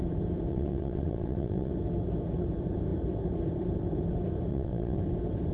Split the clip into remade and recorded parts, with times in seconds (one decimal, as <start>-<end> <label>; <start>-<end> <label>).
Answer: 0.0-0.5 recorded; 0.5-1.7 remade; 1.7-4.5 recorded; 4.5-5.0 remade; 5.0-5.5 recorded